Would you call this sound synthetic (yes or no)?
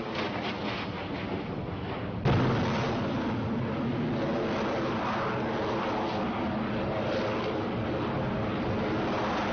no